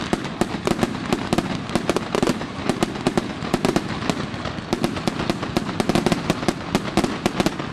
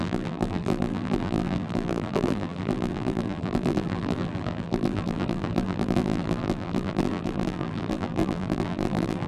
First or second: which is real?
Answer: first